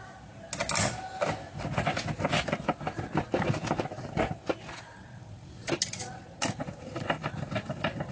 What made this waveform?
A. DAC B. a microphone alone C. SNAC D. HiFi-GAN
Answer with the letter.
B